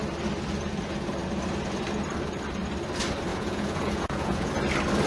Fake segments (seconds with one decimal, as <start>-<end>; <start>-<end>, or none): 3.3-4.5